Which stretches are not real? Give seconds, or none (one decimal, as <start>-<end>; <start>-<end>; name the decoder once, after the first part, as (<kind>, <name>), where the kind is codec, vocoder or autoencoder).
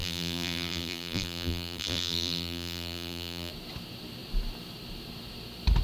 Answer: 0.0-3.5 (vocoder, BigVGAN v2)